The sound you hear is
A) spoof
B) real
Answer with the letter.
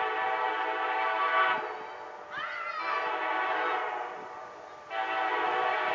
B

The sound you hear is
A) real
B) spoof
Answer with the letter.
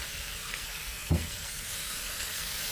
B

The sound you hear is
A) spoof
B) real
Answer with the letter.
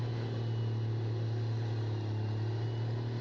B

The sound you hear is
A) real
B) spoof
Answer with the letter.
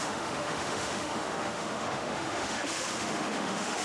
B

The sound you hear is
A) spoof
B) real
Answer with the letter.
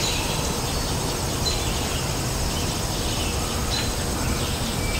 B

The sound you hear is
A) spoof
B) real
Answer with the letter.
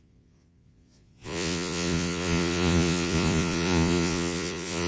A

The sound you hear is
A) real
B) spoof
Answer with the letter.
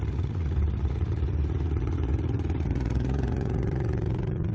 B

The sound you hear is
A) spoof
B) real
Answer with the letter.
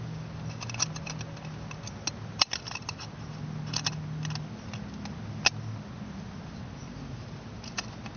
B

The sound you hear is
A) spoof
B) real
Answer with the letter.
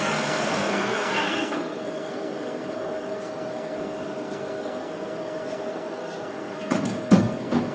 A